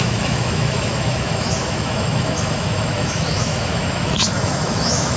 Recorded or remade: remade